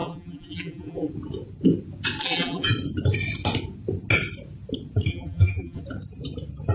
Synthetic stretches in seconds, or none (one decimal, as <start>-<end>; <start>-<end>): 0.0-1.1; 2.2-2.7; 5.1-5.8

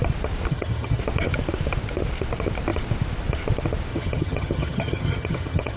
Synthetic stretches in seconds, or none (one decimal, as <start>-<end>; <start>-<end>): 0.5-1.0; 3.9-5.8

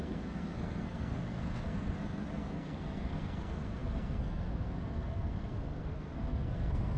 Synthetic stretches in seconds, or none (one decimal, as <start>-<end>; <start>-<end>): 0.0-7.0

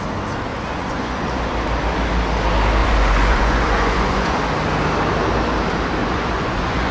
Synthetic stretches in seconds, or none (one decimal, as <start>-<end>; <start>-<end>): 0.5-1.4; 2.8-4.4; 6.0-6.9

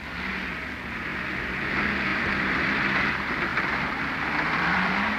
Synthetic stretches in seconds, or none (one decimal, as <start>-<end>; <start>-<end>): 1.1-1.7; 2.1-3.1; 3.5-5.2

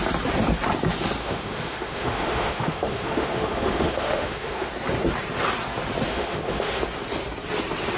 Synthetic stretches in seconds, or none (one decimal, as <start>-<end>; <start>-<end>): 1.2-4.7; 6.1-6.8